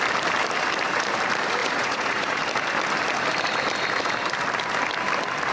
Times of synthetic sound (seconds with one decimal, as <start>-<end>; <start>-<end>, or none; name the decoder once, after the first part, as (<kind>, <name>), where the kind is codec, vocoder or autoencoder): 1.6-2.4 (vocoder, Vocos)